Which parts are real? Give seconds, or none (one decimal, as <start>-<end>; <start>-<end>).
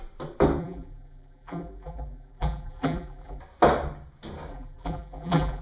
0.0-0.6; 3.4-4.5